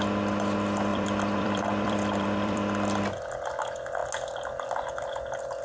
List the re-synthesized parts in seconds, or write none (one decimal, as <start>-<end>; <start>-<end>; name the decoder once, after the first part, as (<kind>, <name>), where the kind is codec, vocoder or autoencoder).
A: 0.9-3.0 (vocoder, BigVGAN v2)